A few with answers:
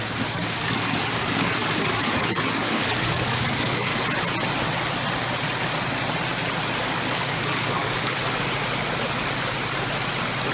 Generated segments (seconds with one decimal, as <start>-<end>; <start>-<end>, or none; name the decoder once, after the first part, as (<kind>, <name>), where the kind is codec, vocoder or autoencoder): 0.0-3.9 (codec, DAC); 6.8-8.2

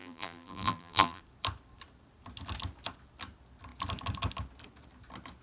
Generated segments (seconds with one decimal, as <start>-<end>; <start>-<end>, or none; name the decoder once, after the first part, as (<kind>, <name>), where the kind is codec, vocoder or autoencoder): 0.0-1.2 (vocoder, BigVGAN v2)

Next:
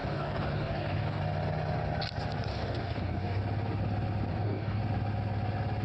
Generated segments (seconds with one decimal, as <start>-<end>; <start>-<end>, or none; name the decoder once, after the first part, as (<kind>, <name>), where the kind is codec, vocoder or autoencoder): 0.0-1.2 (codec, DAC); 2.5-3.4; 4.3-4.8

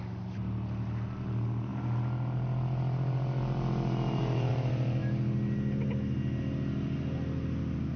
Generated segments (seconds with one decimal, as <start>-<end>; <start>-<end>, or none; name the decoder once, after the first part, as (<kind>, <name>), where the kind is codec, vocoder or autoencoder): none

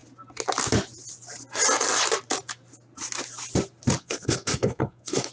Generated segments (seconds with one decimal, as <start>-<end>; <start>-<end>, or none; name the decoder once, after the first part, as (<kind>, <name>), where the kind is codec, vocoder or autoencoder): 4.0-5.3 (codec, SNAC)

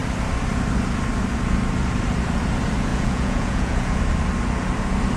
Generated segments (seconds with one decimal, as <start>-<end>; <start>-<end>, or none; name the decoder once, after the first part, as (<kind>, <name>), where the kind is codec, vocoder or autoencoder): 2.9-4.0 (vocoder, Vocos)